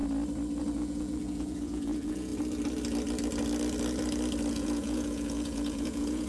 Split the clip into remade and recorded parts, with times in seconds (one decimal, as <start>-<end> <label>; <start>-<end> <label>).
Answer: 0.0-0.6 recorded; 0.6-2.3 remade; 2.3-4.5 recorded; 4.5-6.3 remade

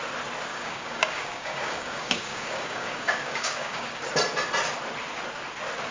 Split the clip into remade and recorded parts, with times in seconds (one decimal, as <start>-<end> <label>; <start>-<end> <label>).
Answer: 0.0-0.5 recorded; 0.5-4.0 remade; 4.0-5.9 recorded

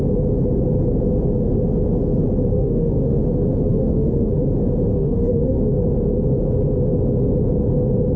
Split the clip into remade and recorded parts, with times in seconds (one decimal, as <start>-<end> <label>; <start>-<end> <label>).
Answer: 0.0-2.5 recorded; 2.5-3.2 remade; 3.2-3.7 recorded; 3.7-4.3 remade; 4.3-4.9 recorded; 4.9-5.6 remade; 5.6-8.2 recorded